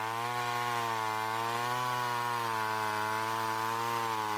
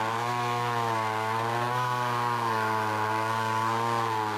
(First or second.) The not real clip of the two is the second